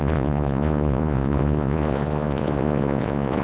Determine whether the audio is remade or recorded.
remade